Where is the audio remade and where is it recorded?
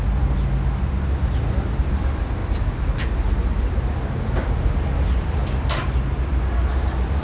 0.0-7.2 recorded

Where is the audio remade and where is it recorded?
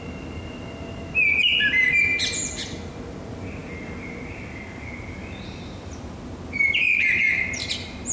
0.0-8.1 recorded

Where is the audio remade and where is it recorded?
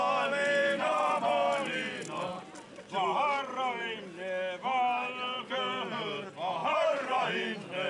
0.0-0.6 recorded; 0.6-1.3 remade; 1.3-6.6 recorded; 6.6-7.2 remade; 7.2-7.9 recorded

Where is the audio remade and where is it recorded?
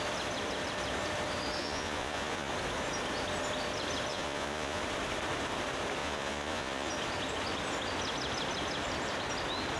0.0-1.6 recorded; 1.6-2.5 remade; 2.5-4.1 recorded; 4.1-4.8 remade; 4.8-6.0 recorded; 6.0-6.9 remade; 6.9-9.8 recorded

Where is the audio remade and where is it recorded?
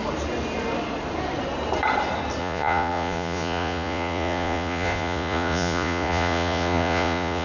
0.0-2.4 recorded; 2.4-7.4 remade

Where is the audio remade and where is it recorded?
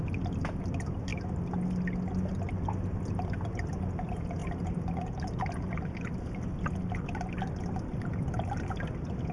0.0-9.3 recorded